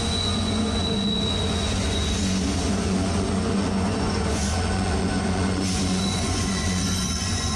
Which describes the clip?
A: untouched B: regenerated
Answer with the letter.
B